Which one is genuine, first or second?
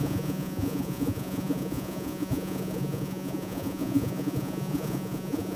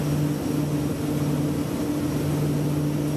second